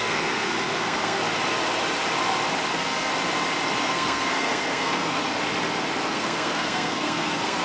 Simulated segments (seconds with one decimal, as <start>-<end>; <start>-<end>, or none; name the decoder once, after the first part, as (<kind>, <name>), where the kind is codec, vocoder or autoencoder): 0.0-1.2 (codec, SNAC); 2.7-3.1; 3.8-5.2; 6.1-7.6